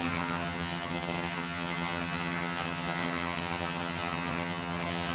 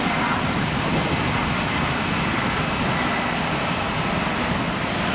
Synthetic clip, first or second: first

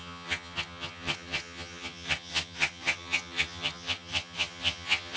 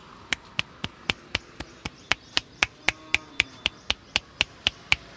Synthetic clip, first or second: first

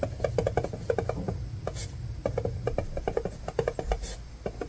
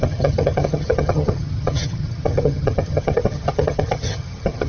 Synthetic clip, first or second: second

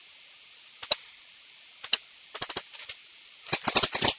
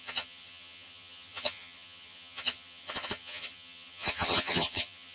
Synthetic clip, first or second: second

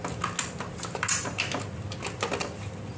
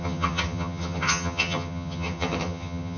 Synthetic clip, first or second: second